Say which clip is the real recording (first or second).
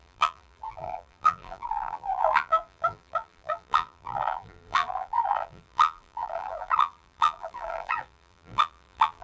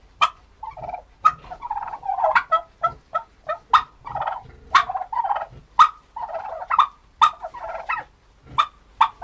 second